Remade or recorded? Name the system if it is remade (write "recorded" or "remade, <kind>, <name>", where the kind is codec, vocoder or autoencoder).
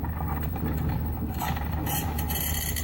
remade, vocoder, BigVGAN v2